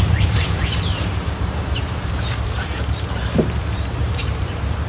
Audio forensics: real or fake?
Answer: fake